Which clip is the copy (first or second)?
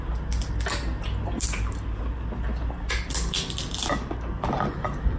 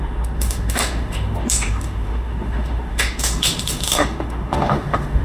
second